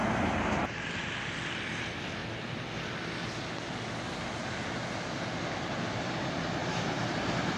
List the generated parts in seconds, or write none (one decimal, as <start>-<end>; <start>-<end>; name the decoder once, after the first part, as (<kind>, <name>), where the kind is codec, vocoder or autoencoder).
0.7-2.2 (vocoder, BigVGAN v2); 5.9-7.6